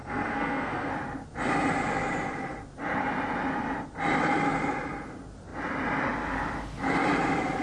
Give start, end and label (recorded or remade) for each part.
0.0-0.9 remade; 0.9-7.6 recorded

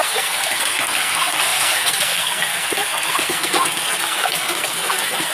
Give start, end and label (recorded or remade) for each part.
0.0-5.3 remade

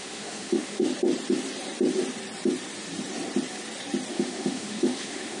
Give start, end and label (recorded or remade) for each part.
0.0-0.9 remade; 0.9-4.1 recorded; 4.1-5.4 remade